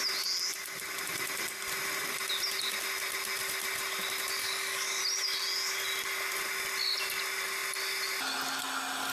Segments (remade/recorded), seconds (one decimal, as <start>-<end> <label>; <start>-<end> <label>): 0.0-4.4 recorded; 4.4-5.0 remade; 5.0-9.1 recorded